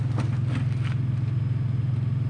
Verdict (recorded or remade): recorded